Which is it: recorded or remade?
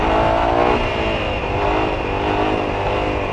recorded